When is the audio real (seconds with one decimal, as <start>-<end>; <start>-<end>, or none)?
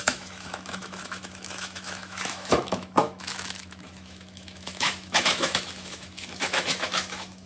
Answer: none